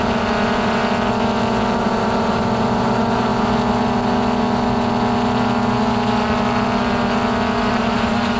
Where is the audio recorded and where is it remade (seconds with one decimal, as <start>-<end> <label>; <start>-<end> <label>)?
0.0-0.8 remade; 0.8-1.8 recorded; 1.8-3.3 remade; 3.3-7.7 recorded; 7.7-8.4 remade